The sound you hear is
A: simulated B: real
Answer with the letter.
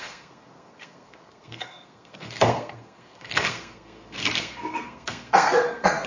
A